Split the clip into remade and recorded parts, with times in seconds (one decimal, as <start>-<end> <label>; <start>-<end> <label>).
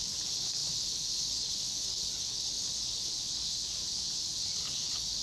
0.0-5.2 remade